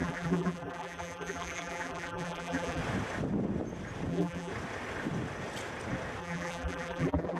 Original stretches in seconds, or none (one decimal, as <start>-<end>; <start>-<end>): 2.8-4.1; 4.5-6.2